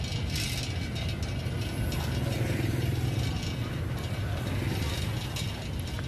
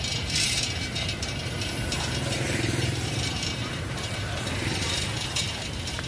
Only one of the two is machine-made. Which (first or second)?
second